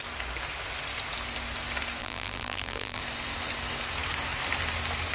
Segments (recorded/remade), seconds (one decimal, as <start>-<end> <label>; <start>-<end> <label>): 0.0-2.0 recorded; 2.0-3.0 remade; 3.0-5.1 recorded